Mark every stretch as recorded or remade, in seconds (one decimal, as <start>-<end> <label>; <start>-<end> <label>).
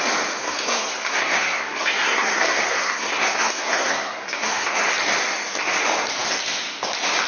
0.0-0.4 recorded; 0.4-4.8 remade; 4.8-7.3 recorded